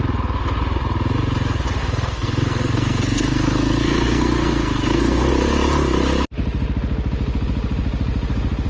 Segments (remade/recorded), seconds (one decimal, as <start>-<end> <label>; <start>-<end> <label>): 0.0-1.8 recorded; 1.8-5.3 remade; 5.3-8.7 recorded